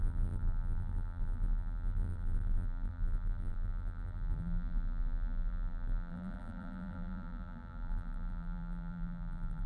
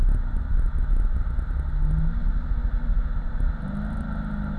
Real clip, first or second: second